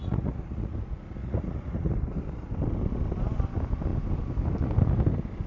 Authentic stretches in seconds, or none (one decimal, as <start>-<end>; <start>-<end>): 0.7-1.2; 1.9-5.5